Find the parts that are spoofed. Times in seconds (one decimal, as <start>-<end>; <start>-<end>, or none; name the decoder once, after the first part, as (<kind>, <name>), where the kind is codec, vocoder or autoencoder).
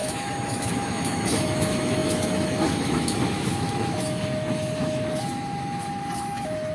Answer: 0.0-6.7 (autoencoder, DAC-VAE)